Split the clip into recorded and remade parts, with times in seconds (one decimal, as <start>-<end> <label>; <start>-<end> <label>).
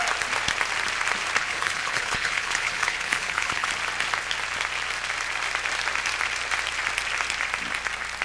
0.0-1.4 recorded; 1.4-3.7 remade; 3.7-8.2 recorded